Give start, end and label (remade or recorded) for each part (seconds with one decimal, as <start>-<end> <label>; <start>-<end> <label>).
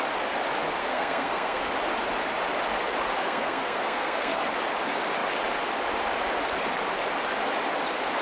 0.0-0.8 recorded; 0.8-1.6 remade; 1.6-3.2 recorded; 3.2-4.4 remade; 4.4-8.2 recorded